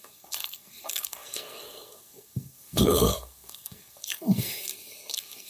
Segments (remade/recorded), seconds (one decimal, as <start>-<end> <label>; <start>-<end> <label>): 0.0-5.5 remade